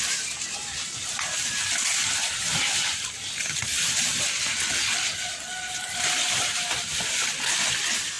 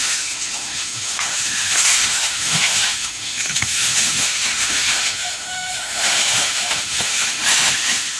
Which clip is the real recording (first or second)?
first